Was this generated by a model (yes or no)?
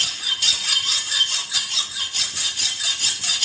no